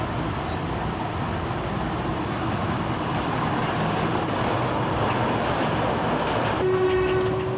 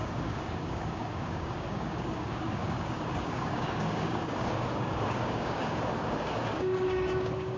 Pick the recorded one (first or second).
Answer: first